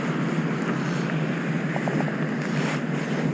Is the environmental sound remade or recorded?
recorded